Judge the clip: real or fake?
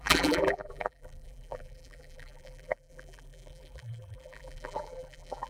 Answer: fake